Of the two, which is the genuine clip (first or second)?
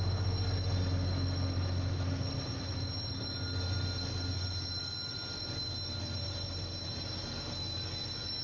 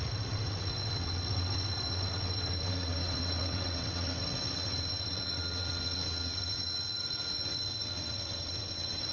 first